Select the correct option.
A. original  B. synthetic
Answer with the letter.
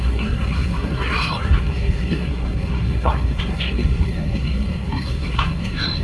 B